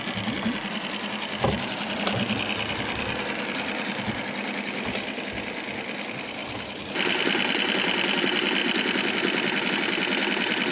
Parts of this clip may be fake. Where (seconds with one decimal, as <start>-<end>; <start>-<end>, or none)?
none